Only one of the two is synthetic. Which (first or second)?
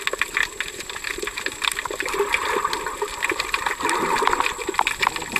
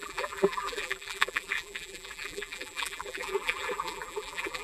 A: second